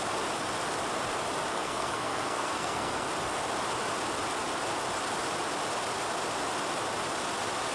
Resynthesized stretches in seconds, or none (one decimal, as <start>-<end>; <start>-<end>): 1.5-3.1